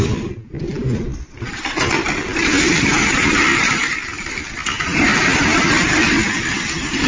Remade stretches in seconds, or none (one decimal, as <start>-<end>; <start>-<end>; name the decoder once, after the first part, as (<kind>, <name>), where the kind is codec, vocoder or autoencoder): 3.5-4.4 (vocoder, BigVGAN v2); 4.9-5.9